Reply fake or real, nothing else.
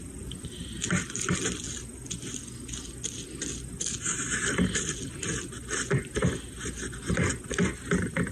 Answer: real